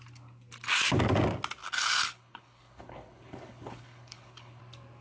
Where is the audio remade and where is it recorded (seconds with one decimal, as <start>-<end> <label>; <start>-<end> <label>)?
0.0-1.6 recorded; 1.6-4.6 remade; 4.6-5.0 recorded